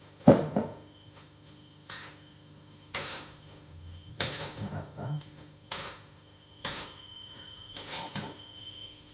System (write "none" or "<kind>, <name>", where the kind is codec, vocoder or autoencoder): autoencoder, DAC-VAE